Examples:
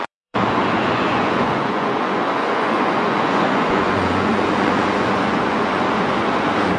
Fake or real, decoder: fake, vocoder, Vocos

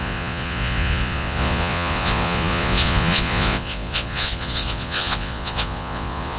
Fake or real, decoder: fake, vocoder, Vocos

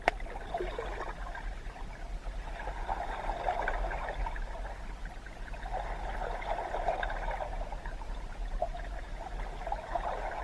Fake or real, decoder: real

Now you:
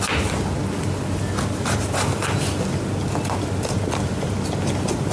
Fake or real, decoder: real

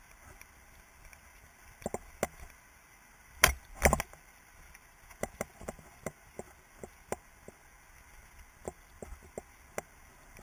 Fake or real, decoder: real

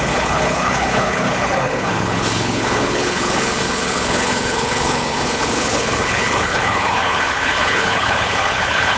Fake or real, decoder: fake, codec, HILCodec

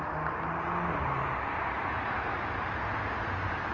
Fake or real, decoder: real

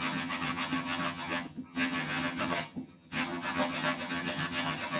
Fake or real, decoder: fake, vocoder, HiFi-GAN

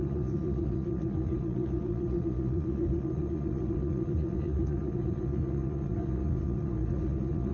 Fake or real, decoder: fake, vocoder, Vocos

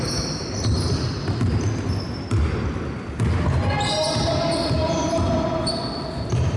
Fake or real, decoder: real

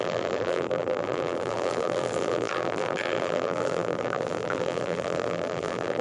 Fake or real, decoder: fake, vocoder, BigVGAN v2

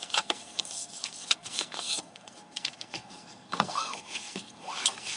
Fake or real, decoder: fake, codec, SNAC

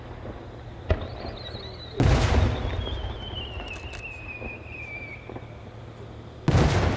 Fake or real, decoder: real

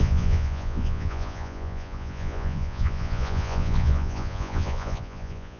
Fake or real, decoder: fake, vocoder, Vocos